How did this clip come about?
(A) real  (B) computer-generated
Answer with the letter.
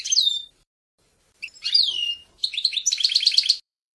B